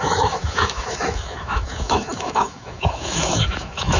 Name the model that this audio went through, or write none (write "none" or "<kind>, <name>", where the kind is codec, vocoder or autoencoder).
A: autoencoder, DAC-VAE